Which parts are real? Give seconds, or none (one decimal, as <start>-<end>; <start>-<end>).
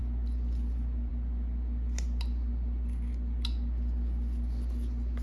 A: 0.0-5.2